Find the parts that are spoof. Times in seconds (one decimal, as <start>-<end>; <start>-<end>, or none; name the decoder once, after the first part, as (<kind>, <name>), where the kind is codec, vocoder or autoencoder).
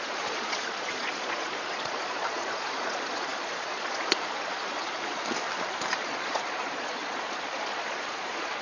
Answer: 0.0-5.2 (vocoder, Vocos); 5.9-8.6